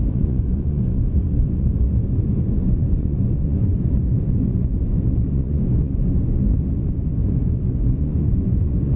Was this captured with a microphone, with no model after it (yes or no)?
no